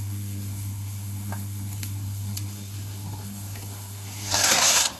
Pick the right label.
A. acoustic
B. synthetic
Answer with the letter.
B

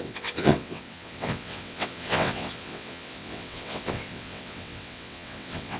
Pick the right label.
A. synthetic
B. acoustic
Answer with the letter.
A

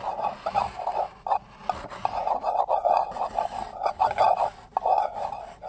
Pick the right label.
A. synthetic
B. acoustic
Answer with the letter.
B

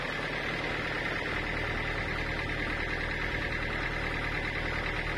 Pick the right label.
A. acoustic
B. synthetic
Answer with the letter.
A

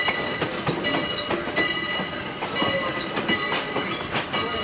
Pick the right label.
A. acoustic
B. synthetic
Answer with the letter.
A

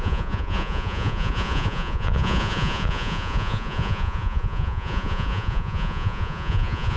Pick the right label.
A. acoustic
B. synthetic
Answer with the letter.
B